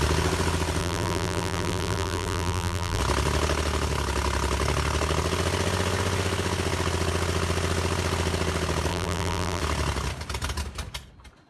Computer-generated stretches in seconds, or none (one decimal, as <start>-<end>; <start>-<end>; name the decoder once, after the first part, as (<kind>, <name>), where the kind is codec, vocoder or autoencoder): 0.8-3.0 (vocoder, BigVGAN v2); 8.9-9.6